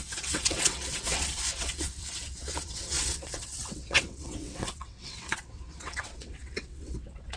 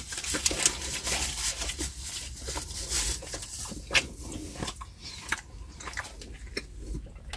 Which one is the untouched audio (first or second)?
second